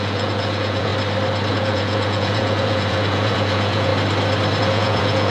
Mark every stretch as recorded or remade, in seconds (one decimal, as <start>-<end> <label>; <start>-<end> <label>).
0.0-0.9 remade; 0.9-1.5 recorded; 1.5-3.9 remade; 3.9-4.6 recorded; 4.6-5.3 remade